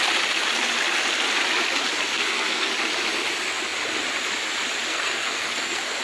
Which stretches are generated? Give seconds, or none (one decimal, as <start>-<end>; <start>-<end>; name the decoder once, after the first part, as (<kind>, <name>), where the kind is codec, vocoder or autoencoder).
2.1-2.7 (codec, SNAC); 4.9-6.0